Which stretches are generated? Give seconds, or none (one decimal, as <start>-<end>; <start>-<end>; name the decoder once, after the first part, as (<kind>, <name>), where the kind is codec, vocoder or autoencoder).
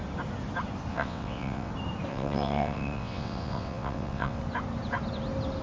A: 0.9-1.7 (vocoder, WaveNeXt); 2.1-4.4